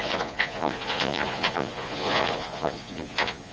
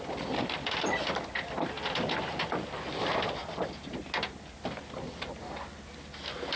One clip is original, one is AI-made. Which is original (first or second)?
second